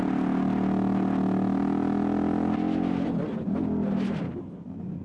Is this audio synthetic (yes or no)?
no